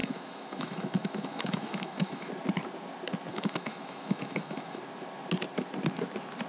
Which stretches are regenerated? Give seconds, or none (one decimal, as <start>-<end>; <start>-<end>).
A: 0.0-2.3; 3.3-4.8